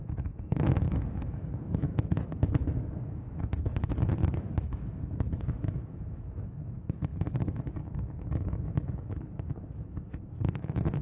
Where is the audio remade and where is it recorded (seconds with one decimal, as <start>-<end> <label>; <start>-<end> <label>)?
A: 0.0-11.0 remade